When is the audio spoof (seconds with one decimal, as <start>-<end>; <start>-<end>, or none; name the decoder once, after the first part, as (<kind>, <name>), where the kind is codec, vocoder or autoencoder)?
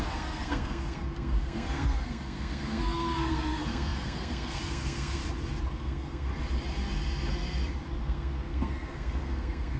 0.0-5.2 (codec, SNAC); 5.7-6.3; 8.0-9.8